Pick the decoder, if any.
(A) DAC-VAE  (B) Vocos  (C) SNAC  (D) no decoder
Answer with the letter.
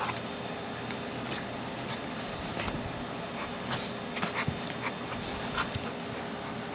D